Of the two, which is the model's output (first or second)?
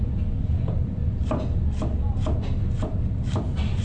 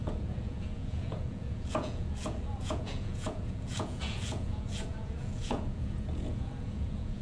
second